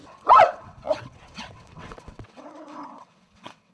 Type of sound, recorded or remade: remade